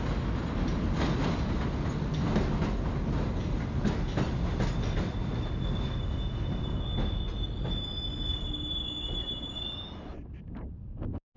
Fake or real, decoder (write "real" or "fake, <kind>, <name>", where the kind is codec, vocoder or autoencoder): real